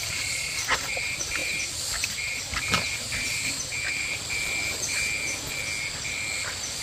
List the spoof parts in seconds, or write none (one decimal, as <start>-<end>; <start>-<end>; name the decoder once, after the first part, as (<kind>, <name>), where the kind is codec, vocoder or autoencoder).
none